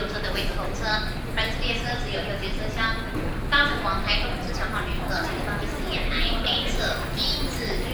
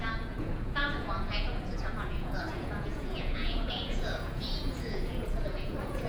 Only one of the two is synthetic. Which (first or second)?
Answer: second